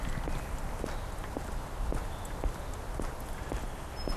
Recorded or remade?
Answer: recorded